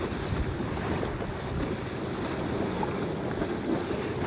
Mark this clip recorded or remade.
recorded